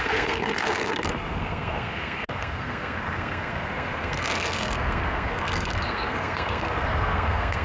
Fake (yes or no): yes